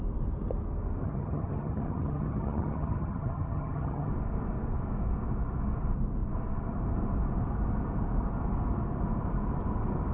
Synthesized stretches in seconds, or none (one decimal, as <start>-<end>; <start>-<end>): 1.0-4.1